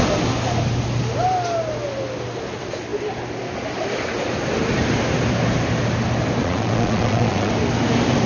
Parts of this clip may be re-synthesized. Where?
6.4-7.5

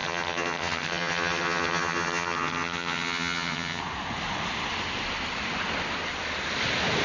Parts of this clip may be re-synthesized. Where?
0.0-3.8

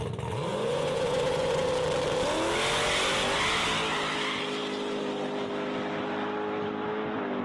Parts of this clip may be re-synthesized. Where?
0.5-1.7

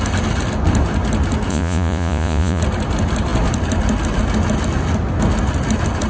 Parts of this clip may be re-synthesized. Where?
1.5-2.6

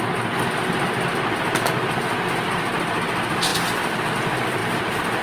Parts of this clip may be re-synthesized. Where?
none